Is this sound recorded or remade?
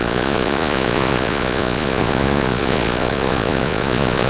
remade